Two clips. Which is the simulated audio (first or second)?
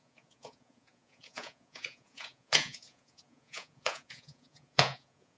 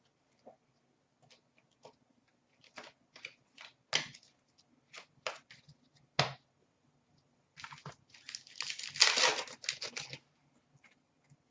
first